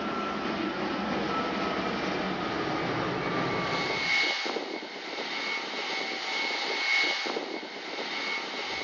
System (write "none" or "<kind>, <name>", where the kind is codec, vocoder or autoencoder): none